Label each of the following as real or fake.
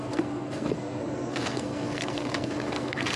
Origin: fake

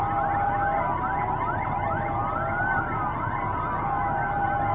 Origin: real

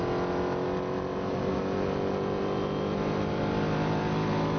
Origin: real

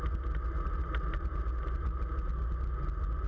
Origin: real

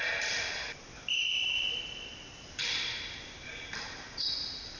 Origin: real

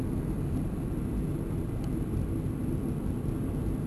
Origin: real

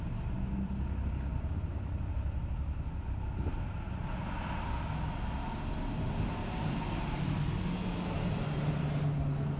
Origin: real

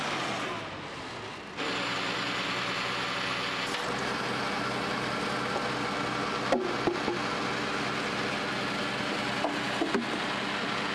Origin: real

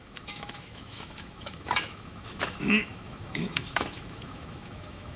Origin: fake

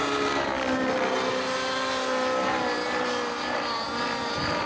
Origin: real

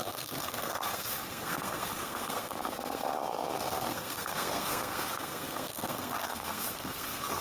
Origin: fake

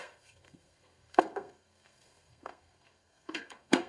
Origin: fake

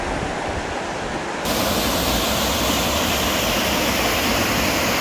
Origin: real